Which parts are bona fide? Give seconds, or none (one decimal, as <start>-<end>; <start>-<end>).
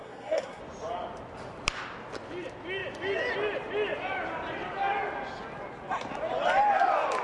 0.6-7.2